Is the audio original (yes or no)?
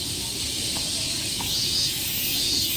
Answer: no